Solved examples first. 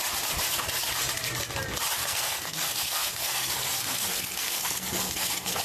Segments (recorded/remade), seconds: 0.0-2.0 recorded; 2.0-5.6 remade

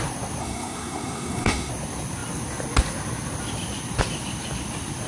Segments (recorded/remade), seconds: 0.0-0.4 recorded; 0.4-1.7 remade; 1.7-5.1 recorded